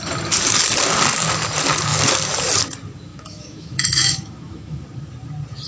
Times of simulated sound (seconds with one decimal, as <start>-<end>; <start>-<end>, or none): 3.1-4.8